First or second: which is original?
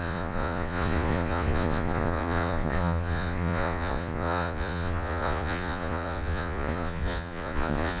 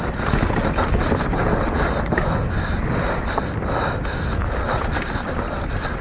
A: second